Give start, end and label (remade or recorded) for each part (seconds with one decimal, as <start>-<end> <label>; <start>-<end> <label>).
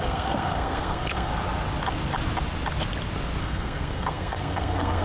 0.0-1.3 remade; 1.3-3.4 recorded; 3.4-5.0 remade